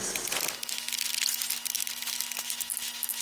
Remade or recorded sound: recorded